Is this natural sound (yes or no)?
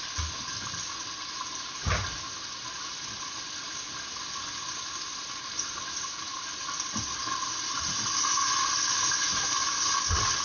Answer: yes